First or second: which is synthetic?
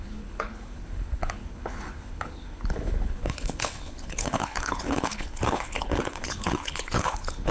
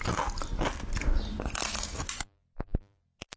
first